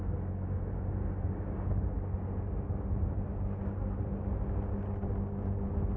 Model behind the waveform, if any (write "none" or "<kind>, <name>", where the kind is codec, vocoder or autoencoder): none